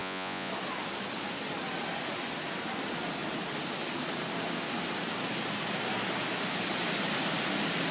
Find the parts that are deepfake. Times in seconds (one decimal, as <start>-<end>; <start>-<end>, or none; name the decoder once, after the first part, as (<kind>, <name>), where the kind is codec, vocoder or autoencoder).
0.0-0.5 (vocoder, Vocos)